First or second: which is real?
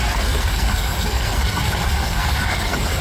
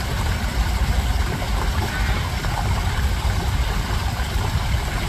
second